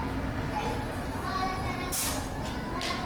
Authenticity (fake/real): real